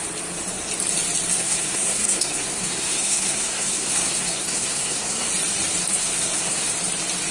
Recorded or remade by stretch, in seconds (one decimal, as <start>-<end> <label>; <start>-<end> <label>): 0.0-1.3 recorded; 1.3-5.3 remade; 5.3-5.9 recorded; 5.9-6.7 remade; 6.7-7.3 recorded